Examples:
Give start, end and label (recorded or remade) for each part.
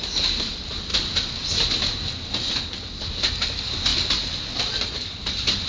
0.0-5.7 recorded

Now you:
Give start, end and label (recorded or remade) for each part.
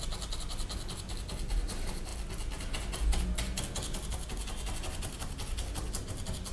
0.0-6.5 recorded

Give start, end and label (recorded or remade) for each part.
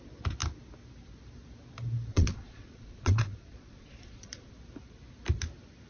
0.0-2.1 recorded; 2.1-4.5 remade; 4.5-5.9 recorded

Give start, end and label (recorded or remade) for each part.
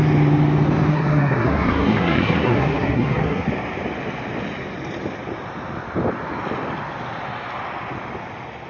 0.0-0.9 recorded; 0.9-3.5 remade; 3.5-8.7 recorded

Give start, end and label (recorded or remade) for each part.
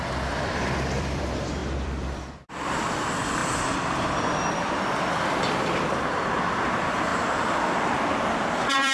0.0-8.9 remade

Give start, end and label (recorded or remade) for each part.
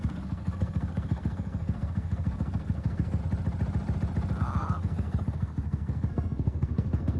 0.0-3.2 remade; 3.2-4.4 recorded; 4.4-7.2 remade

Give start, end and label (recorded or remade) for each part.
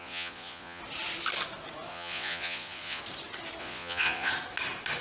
0.0-0.8 remade; 0.8-1.9 recorded; 1.9-3.0 remade; 3.0-3.6 recorded; 3.6-4.3 remade; 4.3-5.0 recorded